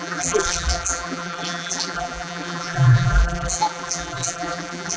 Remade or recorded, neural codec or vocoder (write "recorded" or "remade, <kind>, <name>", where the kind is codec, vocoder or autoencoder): remade, vocoder, BigVGAN v2